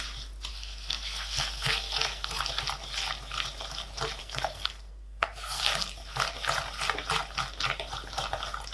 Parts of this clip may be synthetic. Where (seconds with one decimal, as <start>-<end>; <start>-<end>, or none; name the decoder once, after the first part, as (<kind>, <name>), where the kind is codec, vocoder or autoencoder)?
0.5-2.4 (codec, SNAC); 4.2-5.6